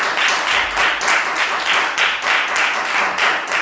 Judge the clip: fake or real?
real